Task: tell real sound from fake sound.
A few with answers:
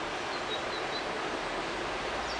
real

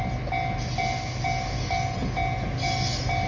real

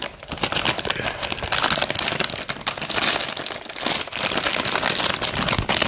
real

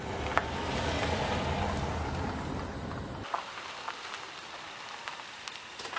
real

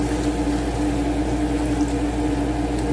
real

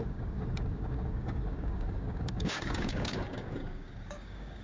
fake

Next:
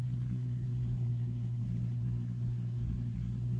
fake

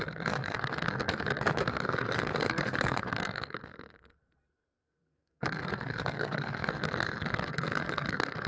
fake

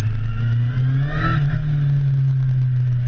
real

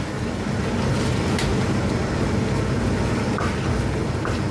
real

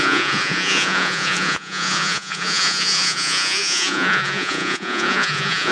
fake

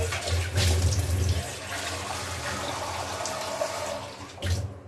real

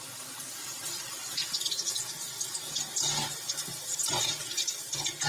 real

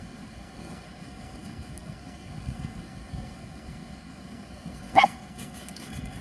fake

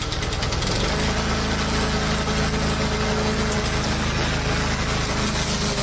real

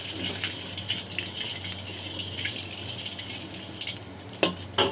real